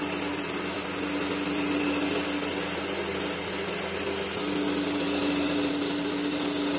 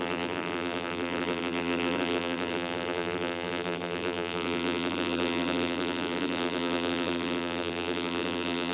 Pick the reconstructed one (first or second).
second